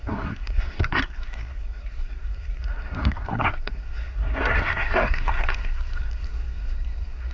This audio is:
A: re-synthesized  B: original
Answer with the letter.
A